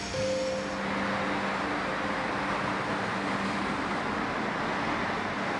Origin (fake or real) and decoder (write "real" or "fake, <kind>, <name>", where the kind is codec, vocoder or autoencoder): real